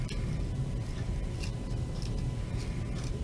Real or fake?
real